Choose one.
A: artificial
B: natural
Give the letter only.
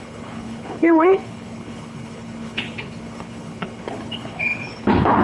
A